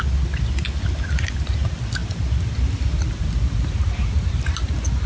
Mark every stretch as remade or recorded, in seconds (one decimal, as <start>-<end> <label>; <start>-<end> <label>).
0.0-5.1 recorded